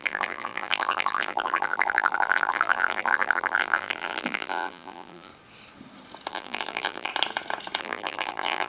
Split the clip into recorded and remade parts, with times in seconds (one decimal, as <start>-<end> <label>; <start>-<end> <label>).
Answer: 0.0-5.3 remade; 5.3-6.3 recorded; 6.3-7.1 remade; 7.1-7.8 recorded; 7.8-8.7 remade